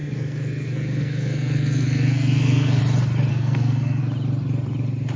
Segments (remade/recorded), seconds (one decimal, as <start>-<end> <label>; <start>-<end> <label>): 0.0-2.8 remade; 2.8-3.3 recorded; 3.3-4.0 remade; 4.0-5.2 recorded

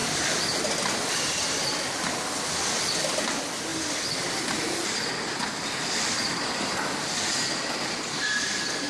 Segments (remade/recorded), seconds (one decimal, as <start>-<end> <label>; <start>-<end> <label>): 0.0-0.7 remade; 0.7-8.9 recorded

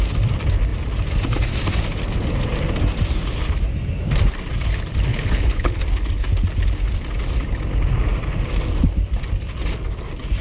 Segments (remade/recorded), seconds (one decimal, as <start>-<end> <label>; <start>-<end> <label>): 0.0-5.1 recorded; 5.1-5.8 remade; 5.8-10.4 recorded

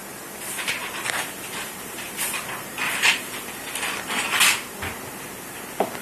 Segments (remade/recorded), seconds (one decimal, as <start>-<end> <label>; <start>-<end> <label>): 0.0-0.8 recorded; 0.8-4.4 remade; 4.4-6.0 recorded

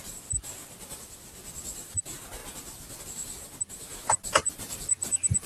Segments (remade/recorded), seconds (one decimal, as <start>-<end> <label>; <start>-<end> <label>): 0.0-5.5 recorded

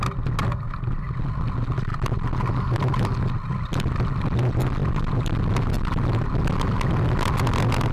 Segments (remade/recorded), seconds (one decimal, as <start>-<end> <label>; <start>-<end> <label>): 0.0-7.9 recorded

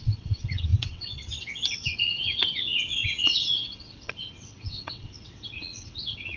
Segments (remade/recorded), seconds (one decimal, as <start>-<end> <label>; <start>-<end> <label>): 0.0-6.4 remade